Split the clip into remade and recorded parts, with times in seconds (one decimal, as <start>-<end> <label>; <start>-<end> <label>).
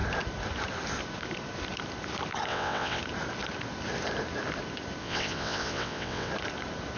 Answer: 0.0-2.5 recorded; 2.5-3.0 remade; 3.0-5.0 recorded; 5.0-6.3 remade; 6.3-7.0 recorded